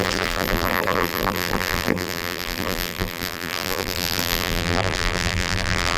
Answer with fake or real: fake